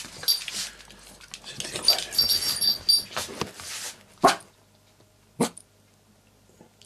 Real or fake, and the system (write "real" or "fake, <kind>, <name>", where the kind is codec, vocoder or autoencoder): real